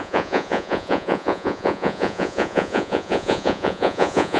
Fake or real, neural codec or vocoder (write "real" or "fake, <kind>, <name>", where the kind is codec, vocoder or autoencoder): fake, vocoder, Vocos